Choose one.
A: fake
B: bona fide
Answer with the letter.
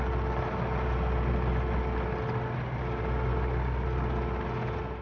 B